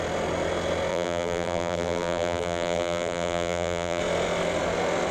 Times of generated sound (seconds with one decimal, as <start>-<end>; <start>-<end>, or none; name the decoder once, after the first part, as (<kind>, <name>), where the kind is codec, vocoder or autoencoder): 0.9-4.0 (vocoder, BigVGAN v2)

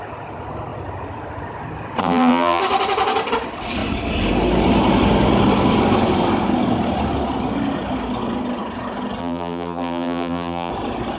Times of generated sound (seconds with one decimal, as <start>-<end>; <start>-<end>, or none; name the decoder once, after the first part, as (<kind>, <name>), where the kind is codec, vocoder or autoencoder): 2.0-2.6 (vocoder, BigVGAN v2); 9.2-10.7

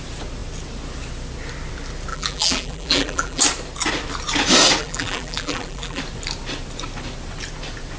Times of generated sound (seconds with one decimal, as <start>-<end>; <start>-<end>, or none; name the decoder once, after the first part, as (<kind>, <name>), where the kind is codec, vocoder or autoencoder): 2.1-3.4 (vocoder, BigVGAN v2); 4.8-6.0

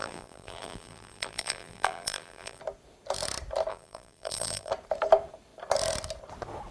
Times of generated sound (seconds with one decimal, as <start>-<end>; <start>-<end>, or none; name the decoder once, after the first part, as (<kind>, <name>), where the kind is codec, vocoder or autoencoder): 0.0-2.6 (vocoder, BigVGAN v2); 3.7-4.7

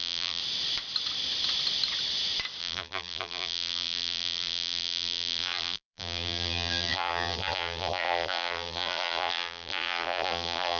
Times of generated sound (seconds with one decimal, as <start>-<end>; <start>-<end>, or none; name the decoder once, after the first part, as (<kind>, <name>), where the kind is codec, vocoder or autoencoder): 0.0-0.4 (vocoder, BigVGAN v2); 2.6-10.8

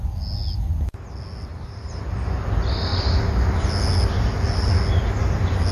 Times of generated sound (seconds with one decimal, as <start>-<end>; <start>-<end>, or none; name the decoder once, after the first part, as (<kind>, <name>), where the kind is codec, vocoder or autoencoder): 1.5-2.1 (vocoder, BigVGAN v2)

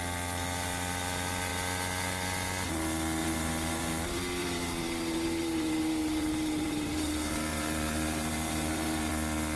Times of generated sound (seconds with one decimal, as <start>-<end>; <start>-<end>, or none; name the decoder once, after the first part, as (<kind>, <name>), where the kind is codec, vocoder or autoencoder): 3.2-3.9 (vocoder, BigVGAN v2); 4.4-9.1